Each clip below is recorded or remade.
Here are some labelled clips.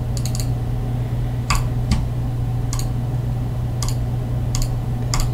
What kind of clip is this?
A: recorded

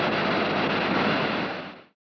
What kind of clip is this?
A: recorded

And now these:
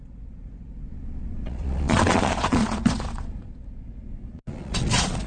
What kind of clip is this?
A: remade